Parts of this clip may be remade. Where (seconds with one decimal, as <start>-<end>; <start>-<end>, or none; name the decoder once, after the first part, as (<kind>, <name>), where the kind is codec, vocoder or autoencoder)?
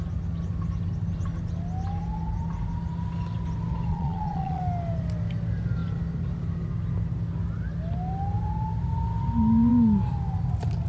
3.9-4.6 (vocoder, Vocos)